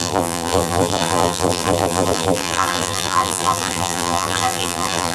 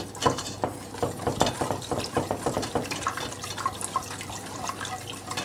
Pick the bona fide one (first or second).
second